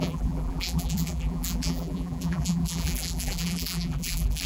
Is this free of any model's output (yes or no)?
no